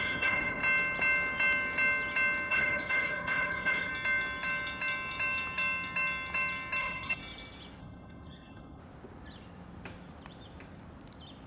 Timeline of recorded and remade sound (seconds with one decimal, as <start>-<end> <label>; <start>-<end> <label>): 0.0-0.6 remade; 0.6-2.5 recorded; 2.5-3.9 remade; 3.9-6.8 recorded; 6.8-7.2 remade; 7.2-7.8 recorded; 7.8-8.8 remade; 8.8-11.5 recorded